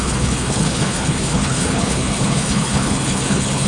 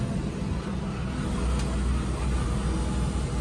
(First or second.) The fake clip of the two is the first